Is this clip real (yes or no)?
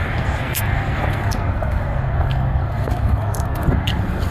no